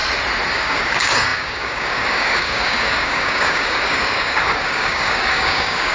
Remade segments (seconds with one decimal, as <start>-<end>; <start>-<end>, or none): 0.5-5.9